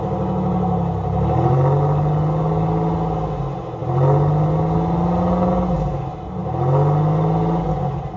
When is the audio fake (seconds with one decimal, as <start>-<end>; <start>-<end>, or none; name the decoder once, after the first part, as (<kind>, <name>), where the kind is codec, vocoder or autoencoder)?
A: none